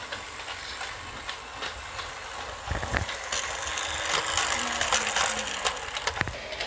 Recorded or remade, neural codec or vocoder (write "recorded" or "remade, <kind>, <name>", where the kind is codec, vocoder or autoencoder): recorded